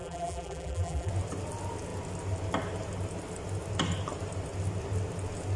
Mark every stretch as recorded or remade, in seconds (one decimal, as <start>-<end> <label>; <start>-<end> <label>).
0.0-1.1 remade; 1.1-5.6 recorded